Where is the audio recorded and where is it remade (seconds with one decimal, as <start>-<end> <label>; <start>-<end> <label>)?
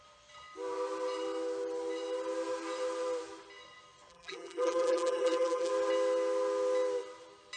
0.0-4.1 recorded; 4.1-5.7 remade; 5.7-7.6 recorded